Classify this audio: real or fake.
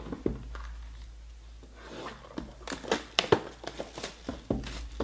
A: real